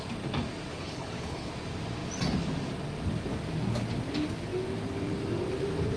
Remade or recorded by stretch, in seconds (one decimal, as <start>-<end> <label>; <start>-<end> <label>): 0.0-0.7 recorded; 0.7-1.5 remade; 1.5-6.0 recorded